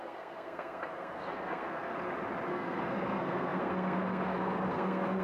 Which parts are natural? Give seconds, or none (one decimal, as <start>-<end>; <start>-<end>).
1.9-2.5